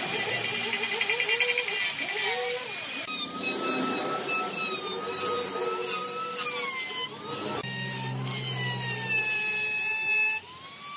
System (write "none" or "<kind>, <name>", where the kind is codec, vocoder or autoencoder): none